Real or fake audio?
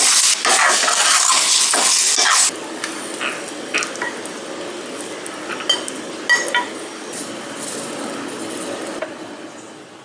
real